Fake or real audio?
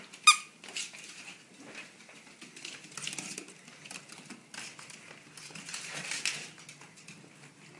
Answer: real